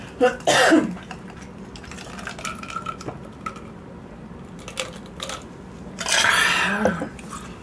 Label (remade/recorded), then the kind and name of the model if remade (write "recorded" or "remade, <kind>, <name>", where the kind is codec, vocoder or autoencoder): recorded